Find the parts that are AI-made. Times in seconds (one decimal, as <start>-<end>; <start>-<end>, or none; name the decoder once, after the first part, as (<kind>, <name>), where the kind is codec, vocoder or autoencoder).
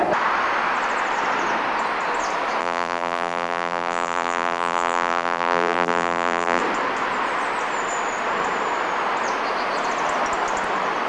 2.6-6.6 (vocoder, BigVGAN v2)